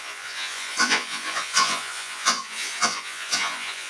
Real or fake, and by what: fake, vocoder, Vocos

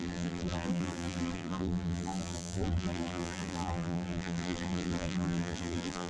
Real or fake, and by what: fake, vocoder, BigVGAN v2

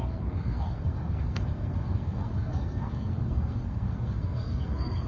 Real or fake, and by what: fake, codec, SNAC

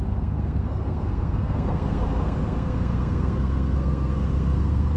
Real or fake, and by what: fake, codec, SNAC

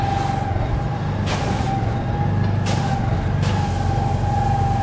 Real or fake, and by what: real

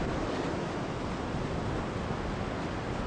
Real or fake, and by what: real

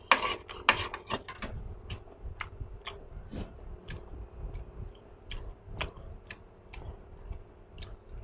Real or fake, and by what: real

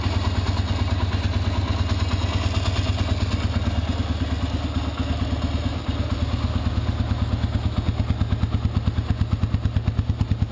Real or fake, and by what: real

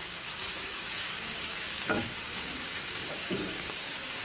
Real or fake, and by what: fake, codec, DAC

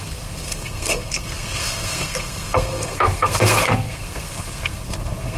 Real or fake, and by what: fake, codec, SNAC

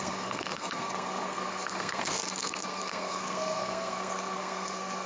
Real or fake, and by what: fake, codec, SNAC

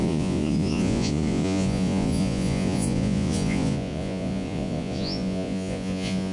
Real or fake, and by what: fake, vocoder, Vocos